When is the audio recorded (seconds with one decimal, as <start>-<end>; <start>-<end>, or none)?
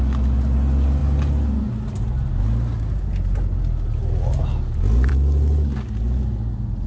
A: 0.0-6.9